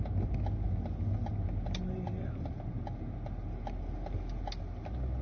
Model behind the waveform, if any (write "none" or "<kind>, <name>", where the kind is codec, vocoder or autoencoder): none